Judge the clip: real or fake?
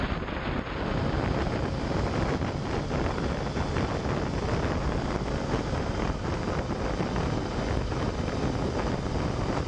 real